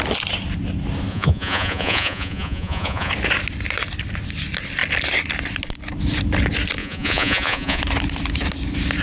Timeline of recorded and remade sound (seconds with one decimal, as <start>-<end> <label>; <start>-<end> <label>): 0.0-1.1 recorded; 1.1-3.1 remade; 3.1-6.8 recorded; 6.8-7.8 remade; 7.8-9.0 recorded